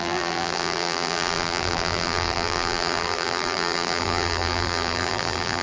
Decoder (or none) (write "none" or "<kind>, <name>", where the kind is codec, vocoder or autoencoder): vocoder, BigVGAN v2